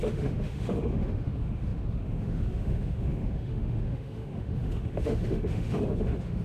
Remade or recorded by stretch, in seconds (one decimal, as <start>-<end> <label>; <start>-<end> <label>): 0.0-6.4 remade